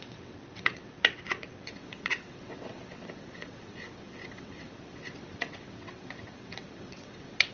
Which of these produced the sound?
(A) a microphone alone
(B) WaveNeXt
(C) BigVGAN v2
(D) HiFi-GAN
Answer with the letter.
B